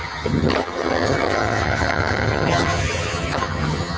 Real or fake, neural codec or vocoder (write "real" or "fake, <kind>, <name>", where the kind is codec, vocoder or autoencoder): fake, vocoder, HiFi-GAN